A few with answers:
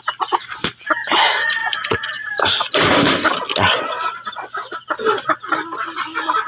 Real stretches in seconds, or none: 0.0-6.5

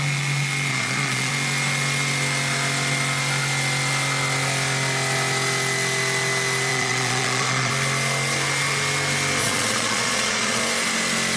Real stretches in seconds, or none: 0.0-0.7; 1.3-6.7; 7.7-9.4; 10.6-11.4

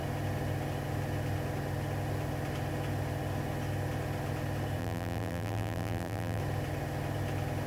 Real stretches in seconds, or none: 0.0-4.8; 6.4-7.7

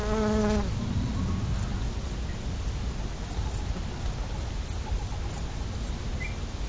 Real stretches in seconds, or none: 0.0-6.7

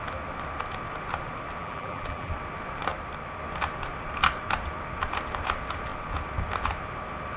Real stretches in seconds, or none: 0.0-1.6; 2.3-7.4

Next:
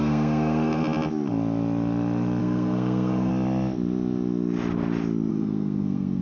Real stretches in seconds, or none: 0.8-2.4; 3.3-5.3

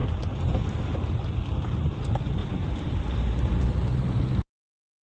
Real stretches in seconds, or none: 0.0-2.4; 4.2-5.0